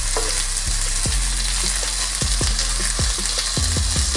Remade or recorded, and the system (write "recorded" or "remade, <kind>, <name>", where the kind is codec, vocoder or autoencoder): recorded